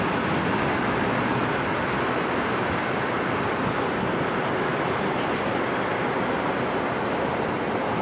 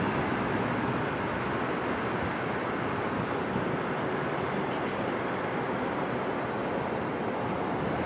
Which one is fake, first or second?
first